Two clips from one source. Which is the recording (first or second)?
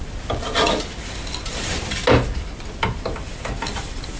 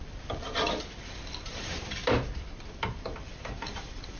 first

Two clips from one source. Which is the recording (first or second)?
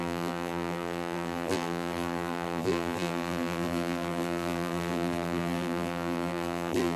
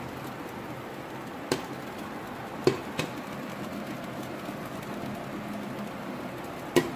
second